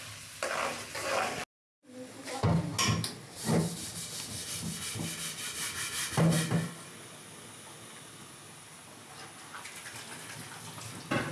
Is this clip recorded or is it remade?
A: recorded